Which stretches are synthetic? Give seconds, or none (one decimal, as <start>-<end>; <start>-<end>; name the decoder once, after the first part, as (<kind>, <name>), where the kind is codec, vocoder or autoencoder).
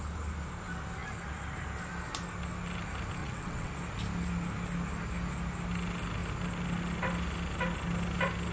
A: 3.2-3.7 (vocoder, WaveNeXt)